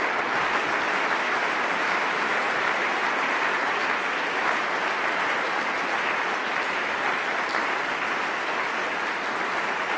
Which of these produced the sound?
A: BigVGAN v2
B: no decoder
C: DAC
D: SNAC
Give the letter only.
B